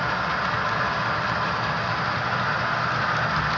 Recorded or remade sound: recorded